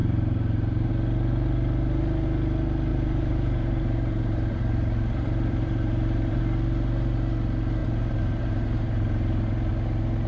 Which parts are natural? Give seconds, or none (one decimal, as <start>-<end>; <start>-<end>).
0.9-2.9; 6.4-7.8; 9.7-10.3

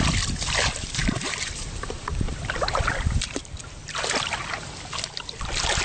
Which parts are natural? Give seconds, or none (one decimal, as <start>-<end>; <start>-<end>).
0.0-1.0; 4.5-5.8